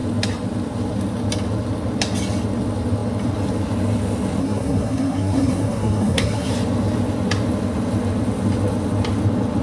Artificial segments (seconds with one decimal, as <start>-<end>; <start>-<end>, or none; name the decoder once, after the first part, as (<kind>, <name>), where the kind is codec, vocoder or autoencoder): 4.4-6.5 (codec, SNAC)